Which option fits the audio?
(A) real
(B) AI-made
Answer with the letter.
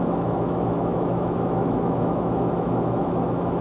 B